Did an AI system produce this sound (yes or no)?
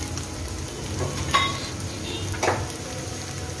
no